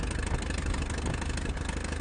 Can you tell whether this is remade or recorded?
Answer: recorded